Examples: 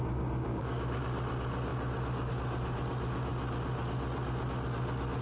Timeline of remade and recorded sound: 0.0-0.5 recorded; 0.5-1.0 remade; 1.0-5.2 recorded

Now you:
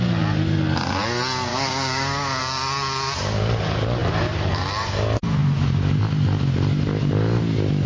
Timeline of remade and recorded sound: 0.0-1.5 recorded; 1.5-2.4 remade; 2.4-7.9 recorded